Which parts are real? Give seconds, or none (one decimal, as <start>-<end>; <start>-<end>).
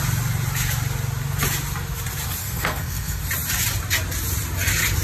0.0-2.4; 3.2-5.0